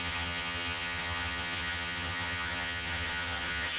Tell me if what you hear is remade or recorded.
remade